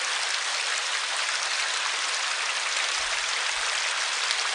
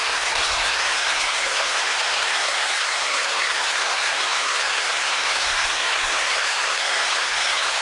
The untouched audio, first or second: first